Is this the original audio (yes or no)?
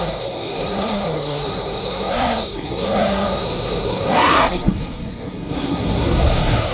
no